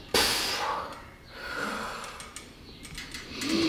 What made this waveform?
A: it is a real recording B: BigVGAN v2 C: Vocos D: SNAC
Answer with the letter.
A